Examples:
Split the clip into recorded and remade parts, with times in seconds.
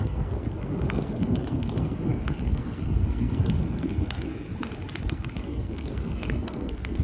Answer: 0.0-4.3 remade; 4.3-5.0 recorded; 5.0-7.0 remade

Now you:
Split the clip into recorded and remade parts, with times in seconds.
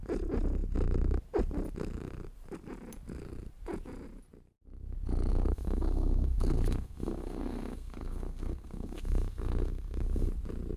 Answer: 0.0-5.3 recorded; 5.3-10.3 remade; 10.3-10.8 recorded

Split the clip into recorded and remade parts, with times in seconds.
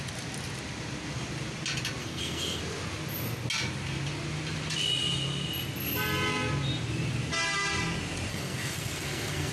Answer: 0.0-2.0 recorded; 2.0-2.6 remade; 2.6-8.3 recorded; 8.3-9.5 remade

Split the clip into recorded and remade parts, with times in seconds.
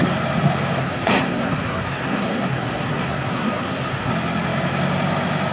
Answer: 0.0-0.8 recorded; 0.8-4.1 remade; 4.1-5.5 recorded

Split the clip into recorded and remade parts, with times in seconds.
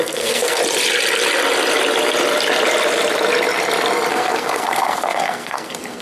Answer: 0.0-0.6 remade; 0.6-4.1 recorded; 4.1-6.0 remade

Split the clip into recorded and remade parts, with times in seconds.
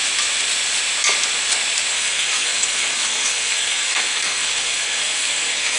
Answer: 0.0-1.9 recorded; 1.9-5.8 remade